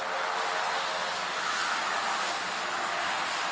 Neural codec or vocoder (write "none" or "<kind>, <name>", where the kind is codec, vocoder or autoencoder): none